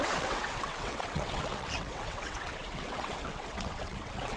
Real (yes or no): no